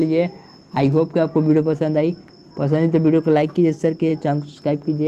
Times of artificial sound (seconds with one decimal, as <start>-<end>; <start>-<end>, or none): none

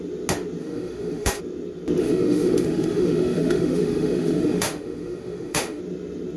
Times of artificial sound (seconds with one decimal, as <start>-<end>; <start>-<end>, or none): 0.6-1.4; 2.0-5.8